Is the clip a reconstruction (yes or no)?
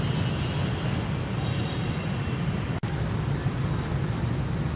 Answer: no